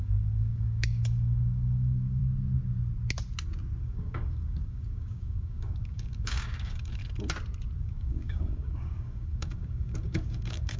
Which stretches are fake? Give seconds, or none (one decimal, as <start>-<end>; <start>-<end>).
0.0-2.2; 3.8-7.0; 7.8-10.8